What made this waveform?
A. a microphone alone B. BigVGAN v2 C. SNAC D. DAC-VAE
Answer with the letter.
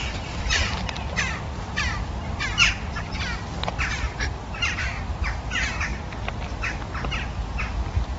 A